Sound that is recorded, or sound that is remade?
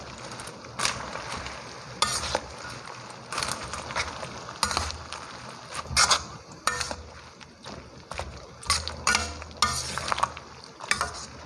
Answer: recorded